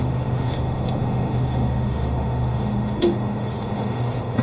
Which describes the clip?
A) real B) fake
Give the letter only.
B